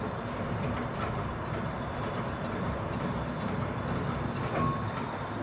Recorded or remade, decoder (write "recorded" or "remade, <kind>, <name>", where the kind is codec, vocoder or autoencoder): recorded